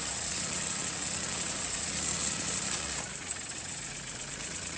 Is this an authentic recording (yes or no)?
no